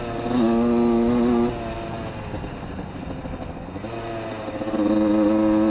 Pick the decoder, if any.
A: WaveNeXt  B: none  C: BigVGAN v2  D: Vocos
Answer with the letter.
B